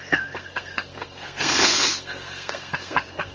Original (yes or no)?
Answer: no